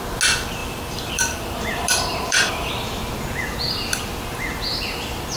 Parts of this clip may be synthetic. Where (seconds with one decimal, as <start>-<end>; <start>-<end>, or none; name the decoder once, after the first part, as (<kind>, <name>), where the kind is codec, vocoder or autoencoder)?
0.6-2.7 (vocoder, BigVGAN v2)